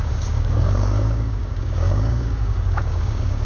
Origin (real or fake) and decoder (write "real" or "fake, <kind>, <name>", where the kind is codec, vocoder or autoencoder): fake, codec, DAC